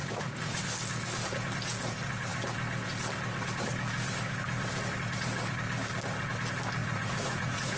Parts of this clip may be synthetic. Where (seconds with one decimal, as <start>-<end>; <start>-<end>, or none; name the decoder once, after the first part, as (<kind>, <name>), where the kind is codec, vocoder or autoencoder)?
0.0-0.6 (vocoder, Vocos); 6.8-7.8